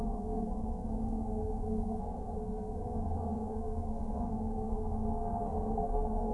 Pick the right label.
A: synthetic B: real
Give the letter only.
A